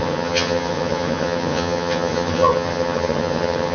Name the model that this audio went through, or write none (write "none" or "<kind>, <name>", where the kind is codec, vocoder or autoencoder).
vocoder, HiFi-GAN